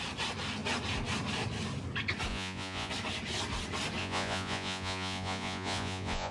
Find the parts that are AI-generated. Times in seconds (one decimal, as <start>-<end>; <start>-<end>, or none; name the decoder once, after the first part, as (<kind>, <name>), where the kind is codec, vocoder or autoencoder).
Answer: 2.3-2.9 (vocoder, Vocos); 4.0-6.3